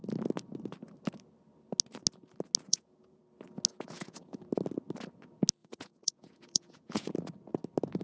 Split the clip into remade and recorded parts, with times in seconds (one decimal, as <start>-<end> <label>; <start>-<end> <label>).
0.0-2.7 recorded; 2.7-3.2 remade; 3.2-3.7 recorded; 3.7-4.4 remade; 4.4-5.6 recorded; 5.6-7.1 remade; 7.1-8.0 recorded